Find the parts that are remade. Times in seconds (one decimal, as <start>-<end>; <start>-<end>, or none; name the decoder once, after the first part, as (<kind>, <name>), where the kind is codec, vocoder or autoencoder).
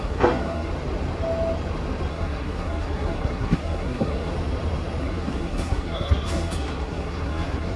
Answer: 0.0-0.7 (codec, SNAC); 2.1-4.3; 5.0-7.8